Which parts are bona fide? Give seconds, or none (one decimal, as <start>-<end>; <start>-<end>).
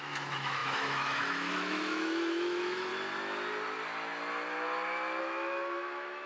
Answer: 2.9-5.2